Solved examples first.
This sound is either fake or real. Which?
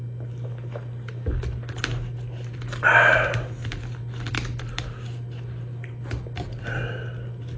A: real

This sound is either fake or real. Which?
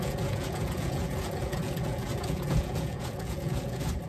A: fake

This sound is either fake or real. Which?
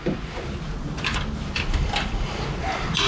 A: real